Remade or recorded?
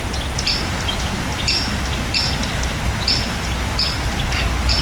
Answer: recorded